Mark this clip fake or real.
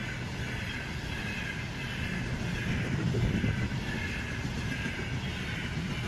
real